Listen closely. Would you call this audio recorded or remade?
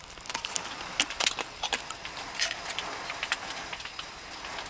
recorded